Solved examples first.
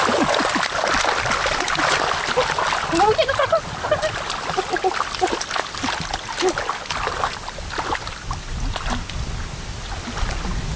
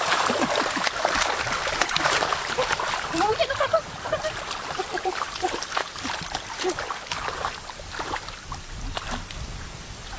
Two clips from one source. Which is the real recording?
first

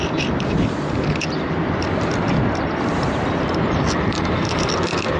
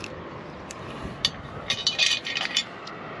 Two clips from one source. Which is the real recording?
second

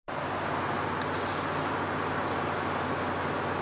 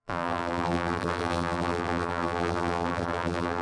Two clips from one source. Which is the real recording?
first